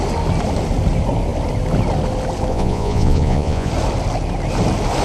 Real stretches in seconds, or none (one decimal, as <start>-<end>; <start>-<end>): 0.0-2.5; 3.7-5.0